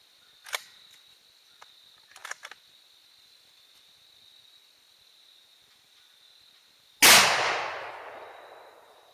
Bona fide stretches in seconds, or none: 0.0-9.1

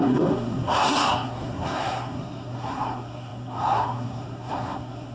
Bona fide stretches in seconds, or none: none

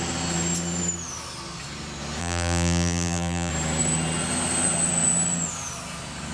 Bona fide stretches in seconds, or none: 0.0-2.2; 3.5-6.3